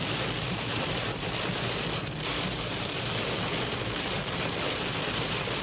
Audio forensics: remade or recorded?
remade